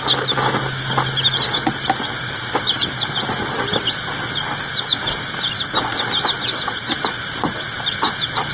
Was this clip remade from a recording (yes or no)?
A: no